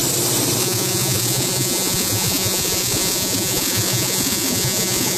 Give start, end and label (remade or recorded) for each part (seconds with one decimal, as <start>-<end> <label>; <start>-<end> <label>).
0.0-0.6 recorded; 0.6-5.2 remade